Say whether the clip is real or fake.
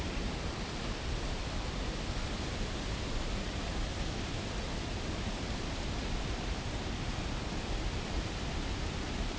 fake